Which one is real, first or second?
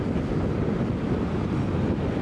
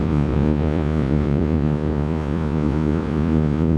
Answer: first